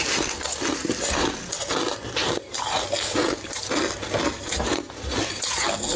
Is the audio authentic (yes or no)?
yes